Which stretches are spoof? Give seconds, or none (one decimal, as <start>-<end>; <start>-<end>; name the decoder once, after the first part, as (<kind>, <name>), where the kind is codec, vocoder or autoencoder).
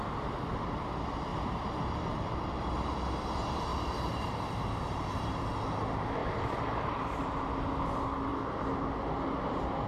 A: 1.3-1.8 (vocoder, BigVGAN v2); 3.7-5.4; 6.2-7.3